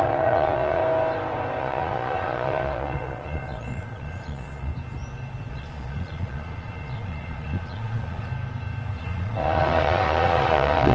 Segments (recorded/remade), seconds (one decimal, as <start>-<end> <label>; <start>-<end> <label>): 0.0-0.8 remade; 0.8-1.6 recorded; 1.6-4.7 remade; 4.7-5.5 recorded; 5.5-8.3 remade; 8.3-9.0 recorded; 9.0-10.9 remade